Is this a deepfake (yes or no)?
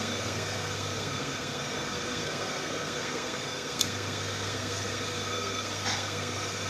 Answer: yes